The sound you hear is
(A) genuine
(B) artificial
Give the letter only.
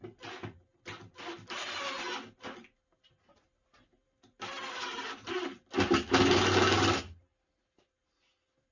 A